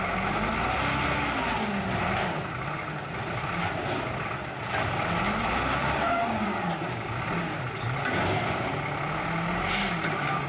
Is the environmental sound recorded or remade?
recorded